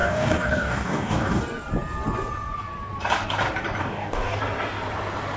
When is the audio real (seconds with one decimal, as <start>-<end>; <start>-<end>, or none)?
1.4-3.8; 4.4-5.4